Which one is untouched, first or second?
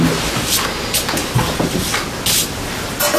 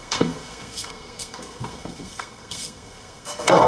first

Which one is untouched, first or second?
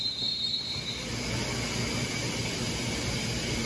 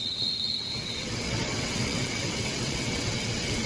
first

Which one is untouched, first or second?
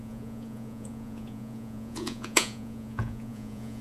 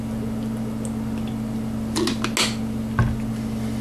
second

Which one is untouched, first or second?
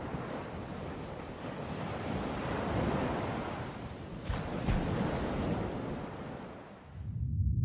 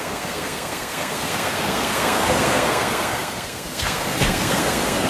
first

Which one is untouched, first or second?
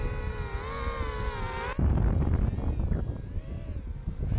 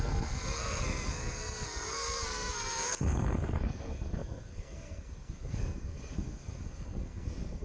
first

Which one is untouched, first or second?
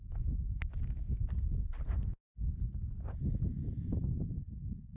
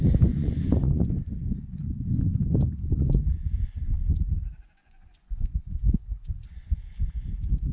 first